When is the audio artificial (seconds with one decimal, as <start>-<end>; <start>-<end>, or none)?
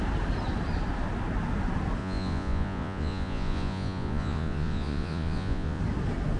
2.0-5.8